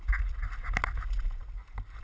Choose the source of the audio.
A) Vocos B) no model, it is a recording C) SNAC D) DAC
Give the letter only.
B